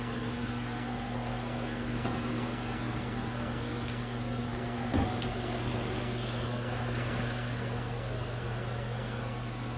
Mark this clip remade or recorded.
remade